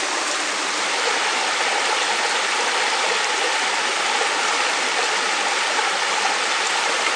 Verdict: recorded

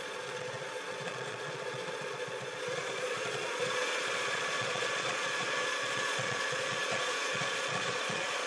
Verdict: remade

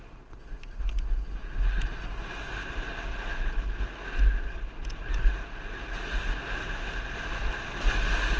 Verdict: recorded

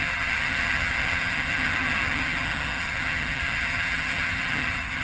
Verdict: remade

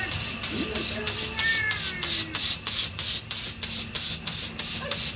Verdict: recorded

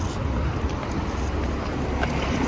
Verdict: recorded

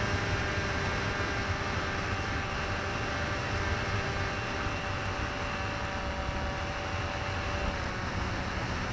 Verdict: recorded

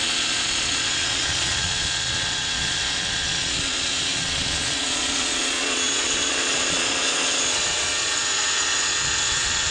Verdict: remade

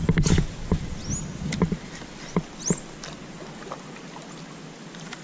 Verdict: recorded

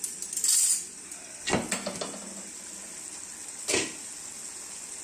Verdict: recorded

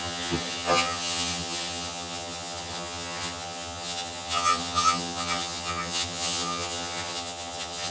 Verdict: remade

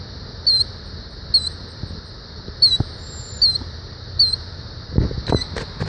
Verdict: recorded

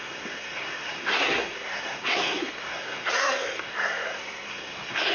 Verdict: remade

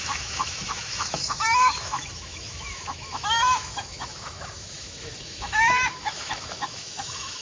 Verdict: remade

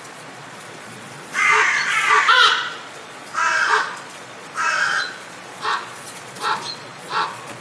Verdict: remade